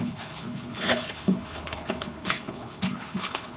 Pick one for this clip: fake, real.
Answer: fake